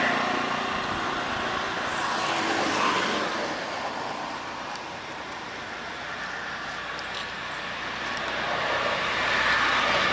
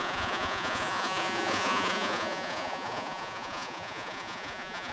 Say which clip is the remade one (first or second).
second